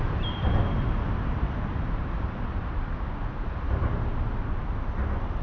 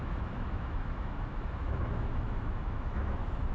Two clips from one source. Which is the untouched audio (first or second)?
first